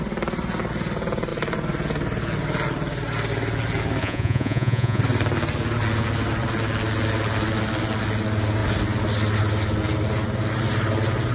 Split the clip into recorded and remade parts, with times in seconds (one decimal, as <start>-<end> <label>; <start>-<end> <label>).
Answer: 0.0-4.0 recorded; 4.0-5.0 remade; 5.0-11.3 recorded